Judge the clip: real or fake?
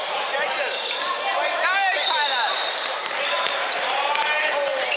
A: fake